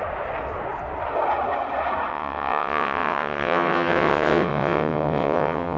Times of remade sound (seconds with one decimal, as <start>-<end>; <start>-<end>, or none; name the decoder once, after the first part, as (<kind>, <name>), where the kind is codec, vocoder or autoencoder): 2.1-5.8 (vocoder, WaveNeXt)